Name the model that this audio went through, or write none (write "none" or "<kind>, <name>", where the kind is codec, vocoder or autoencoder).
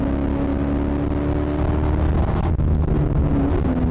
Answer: none